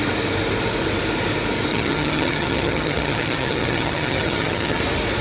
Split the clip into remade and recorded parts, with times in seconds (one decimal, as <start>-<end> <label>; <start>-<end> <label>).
0.0-1.7 recorded; 1.7-4.8 remade; 4.8-5.2 recorded